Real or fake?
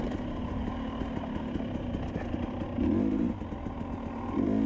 real